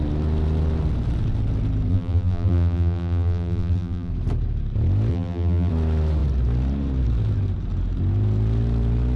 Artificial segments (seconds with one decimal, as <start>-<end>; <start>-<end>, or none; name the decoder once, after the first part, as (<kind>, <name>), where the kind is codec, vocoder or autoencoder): 1.9-4.1 (vocoder, BigVGAN v2); 5.1-5.7